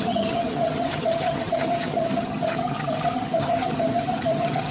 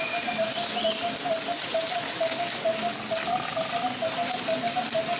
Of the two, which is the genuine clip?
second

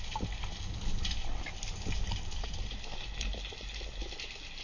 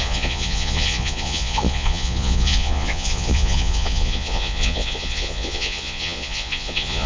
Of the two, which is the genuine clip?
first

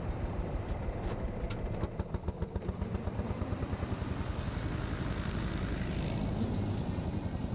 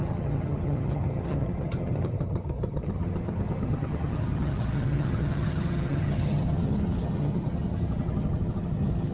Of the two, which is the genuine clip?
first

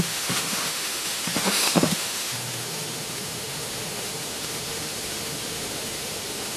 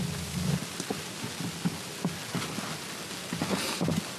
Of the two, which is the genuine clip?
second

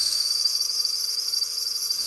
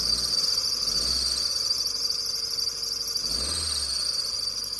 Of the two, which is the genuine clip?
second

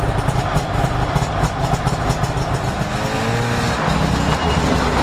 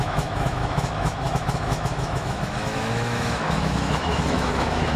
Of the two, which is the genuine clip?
first